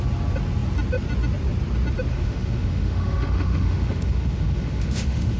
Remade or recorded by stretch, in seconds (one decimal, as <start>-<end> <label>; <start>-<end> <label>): 0.0-2.1 recorded; 2.1-5.4 remade